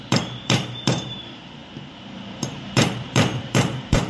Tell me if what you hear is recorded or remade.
remade